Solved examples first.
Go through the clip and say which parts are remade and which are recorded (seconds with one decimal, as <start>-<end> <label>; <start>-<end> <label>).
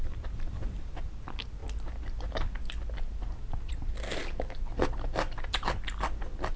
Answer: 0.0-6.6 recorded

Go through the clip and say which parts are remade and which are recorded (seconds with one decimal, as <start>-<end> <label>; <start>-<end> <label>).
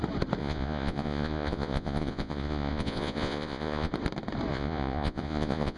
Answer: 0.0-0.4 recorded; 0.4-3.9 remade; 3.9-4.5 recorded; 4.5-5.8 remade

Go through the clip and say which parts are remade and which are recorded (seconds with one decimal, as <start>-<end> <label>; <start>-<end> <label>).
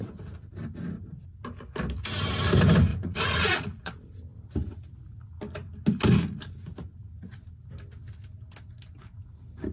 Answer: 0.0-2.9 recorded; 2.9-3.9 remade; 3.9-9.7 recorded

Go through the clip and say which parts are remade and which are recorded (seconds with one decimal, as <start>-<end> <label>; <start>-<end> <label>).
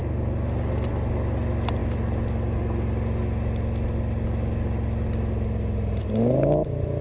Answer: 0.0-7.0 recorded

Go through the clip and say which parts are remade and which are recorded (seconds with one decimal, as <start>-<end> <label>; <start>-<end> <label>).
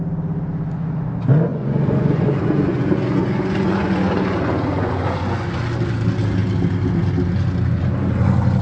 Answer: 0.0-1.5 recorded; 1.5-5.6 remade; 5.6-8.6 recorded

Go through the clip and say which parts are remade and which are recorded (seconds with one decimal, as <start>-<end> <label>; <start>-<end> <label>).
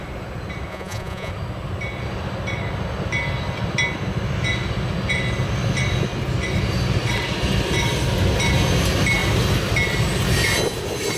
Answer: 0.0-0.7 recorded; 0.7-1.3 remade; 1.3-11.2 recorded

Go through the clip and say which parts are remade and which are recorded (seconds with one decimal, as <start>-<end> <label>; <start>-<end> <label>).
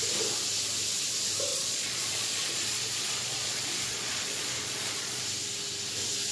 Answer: 0.0-1.5 recorded; 1.5-5.2 remade; 5.2-6.3 recorded